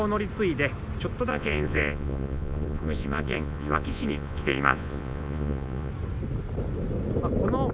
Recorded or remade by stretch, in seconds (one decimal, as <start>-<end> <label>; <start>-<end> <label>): 0.0-1.3 recorded; 1.3-5.9 remade; 5.9-7.7 recorded